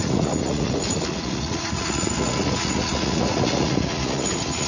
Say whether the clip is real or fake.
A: fake